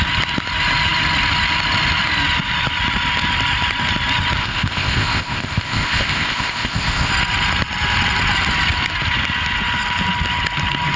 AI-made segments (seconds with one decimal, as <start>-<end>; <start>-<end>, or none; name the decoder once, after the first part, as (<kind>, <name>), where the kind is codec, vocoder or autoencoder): 4.4-7.1 (codec, ZipCodec)